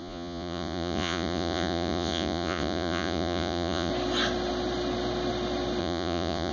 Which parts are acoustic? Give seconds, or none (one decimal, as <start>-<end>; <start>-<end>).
3.9-5.8